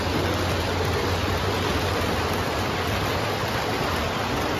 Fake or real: real